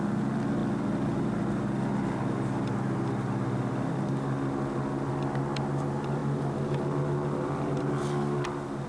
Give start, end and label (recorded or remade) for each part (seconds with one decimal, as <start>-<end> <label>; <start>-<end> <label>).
0.0-8.9 recorded